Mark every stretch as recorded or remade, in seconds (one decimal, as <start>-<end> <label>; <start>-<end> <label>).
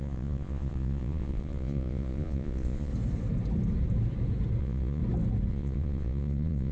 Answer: 0.0-2.9 remade; 2.9-4.6 recorded; 4.6-5.0 remade; 5.0-5.5 recorded; 5.5-6.7 remade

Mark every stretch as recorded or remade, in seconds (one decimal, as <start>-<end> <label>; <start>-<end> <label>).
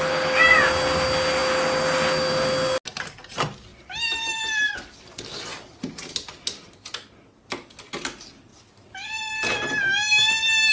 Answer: 0.0-10.7 recorded